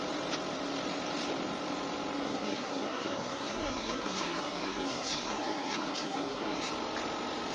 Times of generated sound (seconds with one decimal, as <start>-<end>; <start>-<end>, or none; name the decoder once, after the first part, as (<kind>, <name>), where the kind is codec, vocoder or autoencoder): 2.2-6.7 (codec, SNAC)